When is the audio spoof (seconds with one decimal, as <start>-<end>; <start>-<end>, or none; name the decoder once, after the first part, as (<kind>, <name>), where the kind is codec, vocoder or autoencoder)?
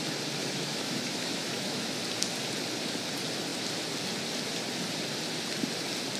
0.4-2.0 (autoencoder, DAC-VAE)